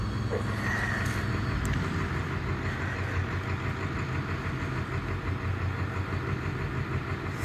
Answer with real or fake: real